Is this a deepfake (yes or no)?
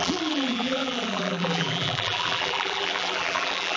yes